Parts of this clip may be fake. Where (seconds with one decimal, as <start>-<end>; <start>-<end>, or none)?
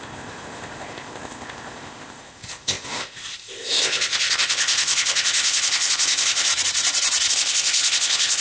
0.0-6.5; 7.3-8.4